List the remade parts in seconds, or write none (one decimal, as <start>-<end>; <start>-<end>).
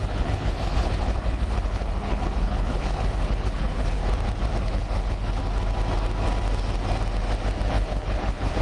0.0-4.0; 4.6-5.4; 7.7-8.6